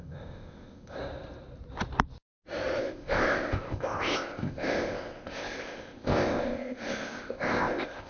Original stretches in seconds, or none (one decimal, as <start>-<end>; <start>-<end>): 1.0-2.8